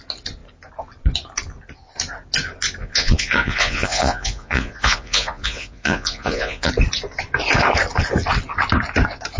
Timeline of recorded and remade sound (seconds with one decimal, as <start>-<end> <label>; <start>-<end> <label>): 0.0-2.8 recorded; 2.8-6.7 remade; 6.7-9.4 recorded